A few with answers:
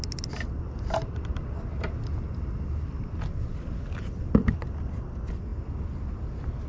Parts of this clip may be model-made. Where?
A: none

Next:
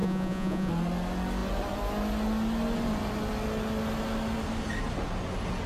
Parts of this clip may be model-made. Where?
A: 0.0-0.7 (vocoder, Vocos)

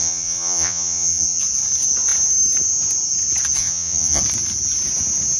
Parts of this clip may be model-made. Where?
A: 0.0-1.4 (vocoder, Vocos); 3.6-4.2

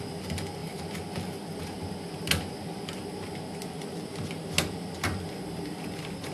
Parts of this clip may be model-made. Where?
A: none

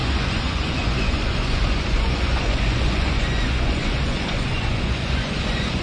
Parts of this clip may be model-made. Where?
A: 0.0-5.8 (vocoder, Vocos)